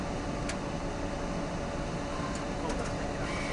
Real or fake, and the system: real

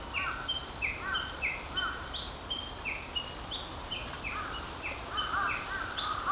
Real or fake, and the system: real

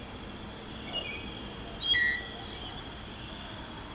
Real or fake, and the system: real